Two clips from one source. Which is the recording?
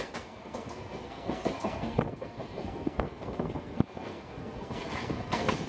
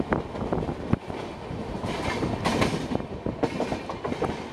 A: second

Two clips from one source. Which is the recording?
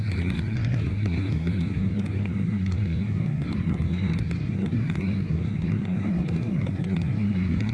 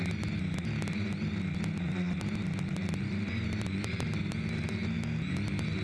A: second